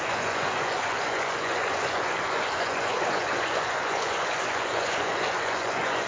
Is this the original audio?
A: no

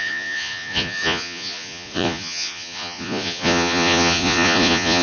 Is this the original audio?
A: no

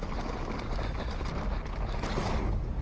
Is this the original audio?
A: yes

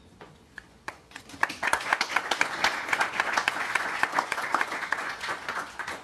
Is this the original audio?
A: no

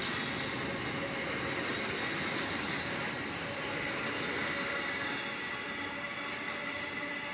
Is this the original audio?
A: yes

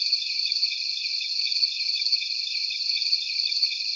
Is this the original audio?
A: no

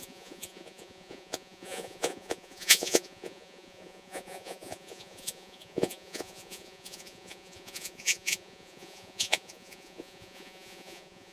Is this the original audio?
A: no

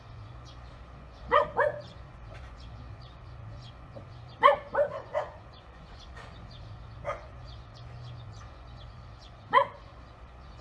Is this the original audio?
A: no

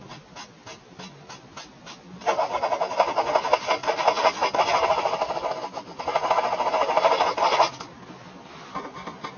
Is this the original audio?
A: yes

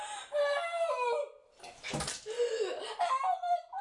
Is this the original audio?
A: yes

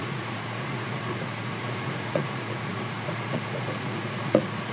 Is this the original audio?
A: no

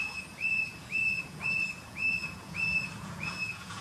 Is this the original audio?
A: no